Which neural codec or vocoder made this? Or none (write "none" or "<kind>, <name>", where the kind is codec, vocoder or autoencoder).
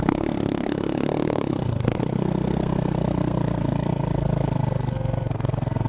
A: codec, SNAC